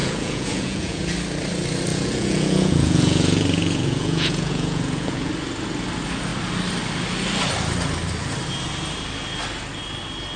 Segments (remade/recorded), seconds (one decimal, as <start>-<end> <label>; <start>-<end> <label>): 0.0-1.0 remade; 1.0-1.9 recorded; 1.9-5.3 remade; 5.3-10.4 recorded